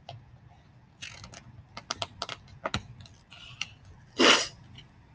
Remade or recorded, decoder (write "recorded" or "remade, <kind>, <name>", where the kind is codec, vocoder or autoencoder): recorded